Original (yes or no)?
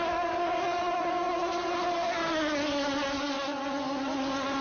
yes